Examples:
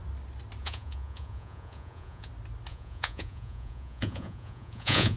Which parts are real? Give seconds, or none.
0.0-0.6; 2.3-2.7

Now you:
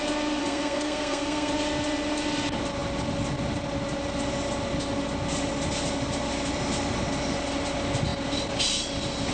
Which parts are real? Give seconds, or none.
0.0-0.4; 1.5-9.3

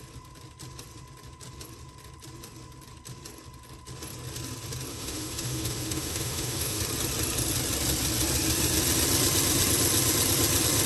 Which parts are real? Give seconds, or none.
0.0-4.9; 6.8-10.9

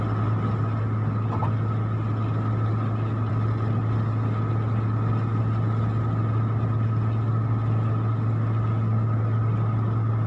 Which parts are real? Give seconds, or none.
0.0-10.3

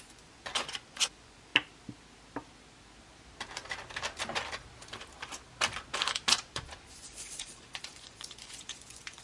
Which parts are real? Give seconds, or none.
1.5-6.3

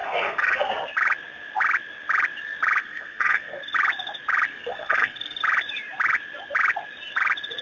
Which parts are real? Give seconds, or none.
0.7-2.8; 3.6-4.5; 5.4-7.6

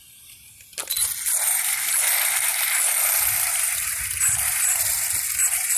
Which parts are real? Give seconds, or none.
0.0-2.5; 4.8-5.8